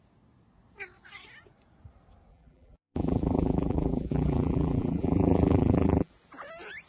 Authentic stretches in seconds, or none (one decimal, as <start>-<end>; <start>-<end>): 0.0-2.3; 6.1-6.9